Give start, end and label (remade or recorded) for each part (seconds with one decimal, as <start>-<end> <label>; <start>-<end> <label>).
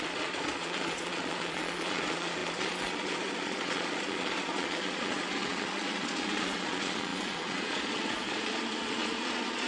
0.0-9.7 remade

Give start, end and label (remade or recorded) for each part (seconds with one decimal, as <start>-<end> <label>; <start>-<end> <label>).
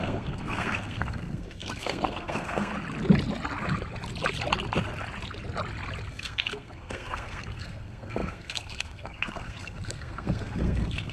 0.0-2.7 remade; 2.7-6.1 recorded; 6.1-11.1 remade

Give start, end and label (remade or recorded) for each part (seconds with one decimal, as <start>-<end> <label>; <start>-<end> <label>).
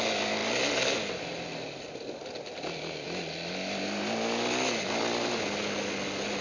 0.0-6.4 recorded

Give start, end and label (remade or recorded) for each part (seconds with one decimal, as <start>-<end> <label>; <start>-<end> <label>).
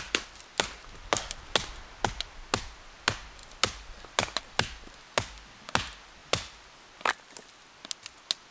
0.0-8.5 recorded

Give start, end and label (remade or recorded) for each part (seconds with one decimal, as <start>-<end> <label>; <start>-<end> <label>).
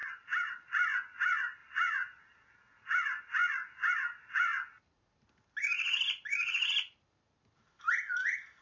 0.0-0.5 remade; 0.5-1.6 recorded; 1.6-2.6 remade; 2.6-8.6 recorded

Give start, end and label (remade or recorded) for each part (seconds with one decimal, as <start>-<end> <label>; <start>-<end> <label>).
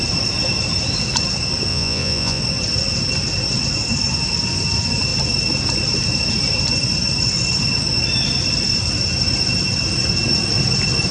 0.0-1.7 recorded; 1.7-2.4 remade; 2.4-11.1 recorded